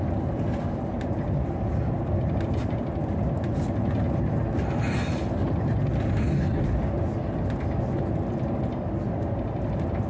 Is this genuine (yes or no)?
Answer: yes